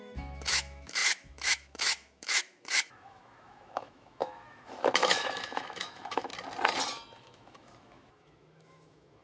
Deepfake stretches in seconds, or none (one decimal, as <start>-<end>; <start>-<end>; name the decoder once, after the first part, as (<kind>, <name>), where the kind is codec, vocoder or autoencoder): 0.0-6.3 (autoencoder, DAC-VAE); 7.2-9.2